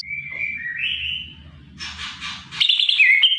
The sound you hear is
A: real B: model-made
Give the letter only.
A